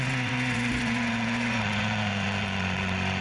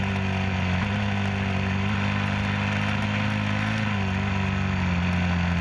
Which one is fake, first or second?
first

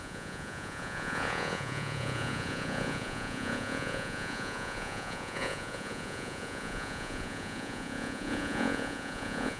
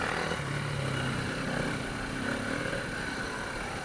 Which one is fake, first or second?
first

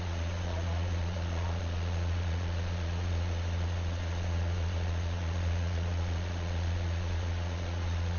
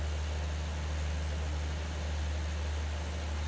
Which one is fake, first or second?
first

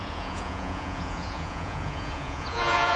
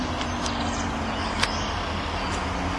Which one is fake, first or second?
first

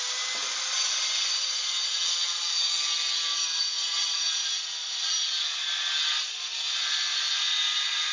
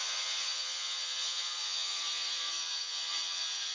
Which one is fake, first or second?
second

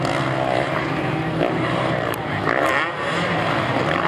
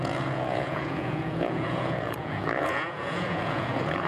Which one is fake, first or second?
second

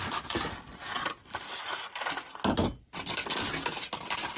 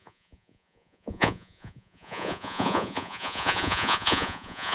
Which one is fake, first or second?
second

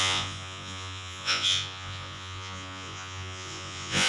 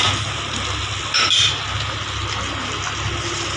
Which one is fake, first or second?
first